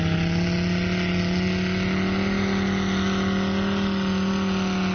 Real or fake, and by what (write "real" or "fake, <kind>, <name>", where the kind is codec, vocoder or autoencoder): real